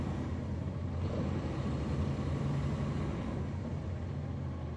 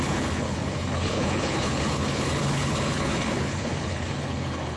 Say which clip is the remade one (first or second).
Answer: second